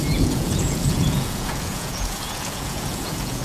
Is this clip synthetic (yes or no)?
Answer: yes